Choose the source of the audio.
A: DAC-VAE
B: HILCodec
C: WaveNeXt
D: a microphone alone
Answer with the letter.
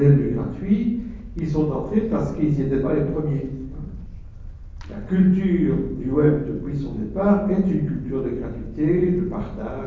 D